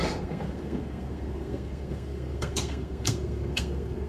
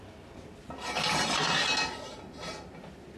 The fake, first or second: first